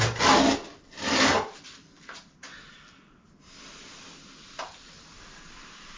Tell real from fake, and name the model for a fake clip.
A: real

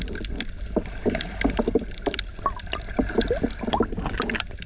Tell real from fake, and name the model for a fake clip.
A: real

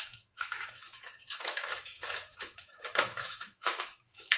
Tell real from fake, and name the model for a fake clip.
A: fake, autoencoder, DAC-VAE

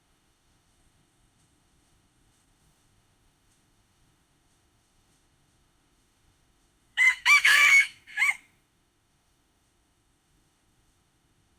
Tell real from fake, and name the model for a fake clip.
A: fake, autoencoder, DAC-VAE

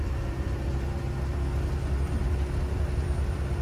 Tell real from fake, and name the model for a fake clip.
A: real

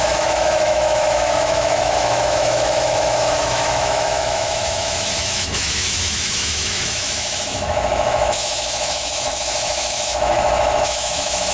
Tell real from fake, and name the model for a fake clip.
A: fake, autoencoder, DAC-VAE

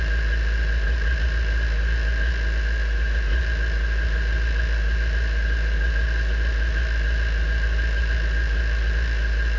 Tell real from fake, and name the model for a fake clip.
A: real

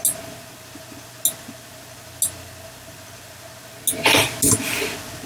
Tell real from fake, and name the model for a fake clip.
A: real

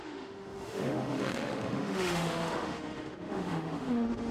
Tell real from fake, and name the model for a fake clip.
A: fake, autoencoder, DAC-VAE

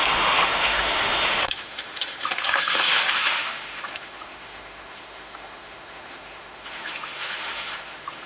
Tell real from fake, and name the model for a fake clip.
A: fake, autoencoder, DAC-VAE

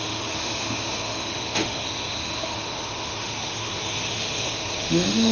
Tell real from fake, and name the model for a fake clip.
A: fake, autoencoder, DAC-VAE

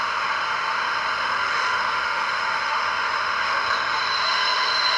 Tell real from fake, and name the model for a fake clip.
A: fake, autoencoder, DAC-VAE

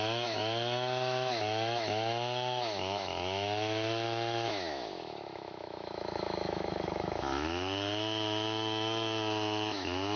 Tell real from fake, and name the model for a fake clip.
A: fake, autoencoder, DAC-VAE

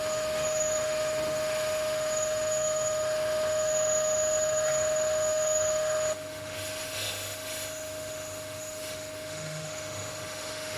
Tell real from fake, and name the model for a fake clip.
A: fake, autoencoder, DAC-VAE